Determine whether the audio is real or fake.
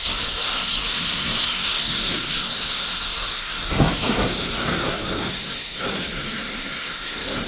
fake